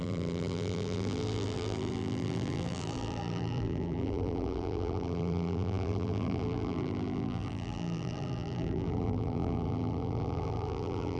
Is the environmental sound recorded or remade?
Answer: remade